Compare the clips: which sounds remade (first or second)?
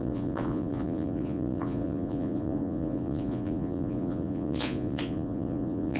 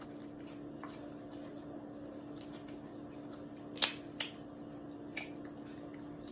first